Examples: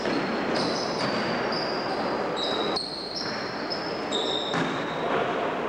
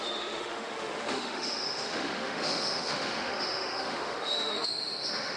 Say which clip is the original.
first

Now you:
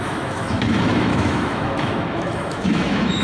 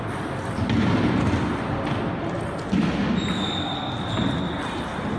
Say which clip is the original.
second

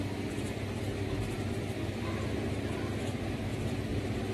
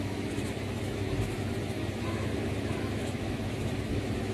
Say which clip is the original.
first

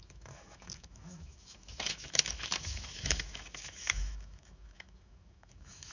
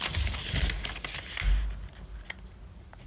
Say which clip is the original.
second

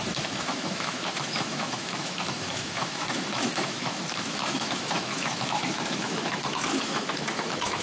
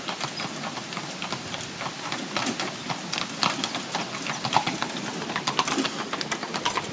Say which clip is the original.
second